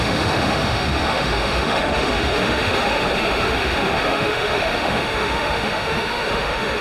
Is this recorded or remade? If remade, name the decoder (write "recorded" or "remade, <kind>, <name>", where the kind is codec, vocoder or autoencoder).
remade, autoencoder, DAC-VAE